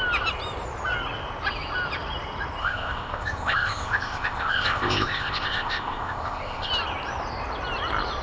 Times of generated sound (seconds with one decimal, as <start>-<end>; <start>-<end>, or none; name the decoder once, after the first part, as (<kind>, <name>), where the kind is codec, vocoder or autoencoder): 2.6-6.7 (codec, ZipCodec)